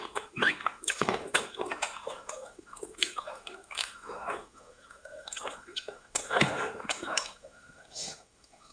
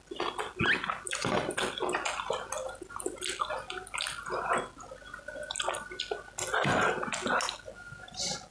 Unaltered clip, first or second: second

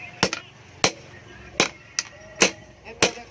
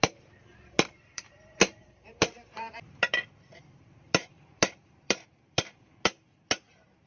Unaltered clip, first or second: first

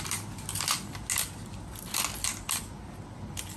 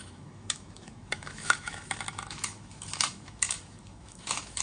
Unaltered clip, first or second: first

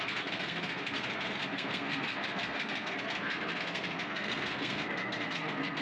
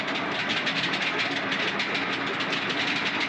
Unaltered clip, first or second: second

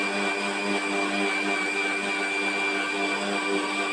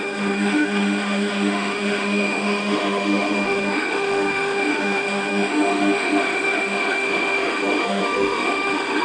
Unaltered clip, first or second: first